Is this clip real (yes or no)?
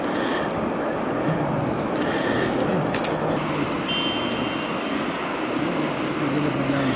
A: yes